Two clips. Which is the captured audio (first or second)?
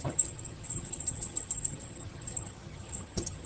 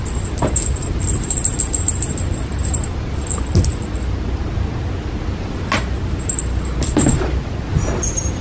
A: second